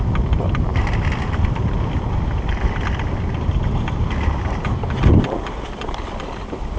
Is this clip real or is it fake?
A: real